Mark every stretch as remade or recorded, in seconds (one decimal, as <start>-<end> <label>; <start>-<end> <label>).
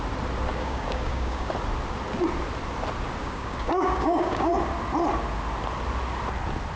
0.0-0.5 recorded; 0.5-1.5 remade; 1.5-3.2 recorded; 3.2-4.5 remade; 4.5-6.8 recorded